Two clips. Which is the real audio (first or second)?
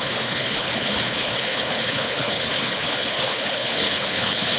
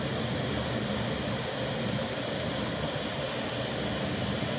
second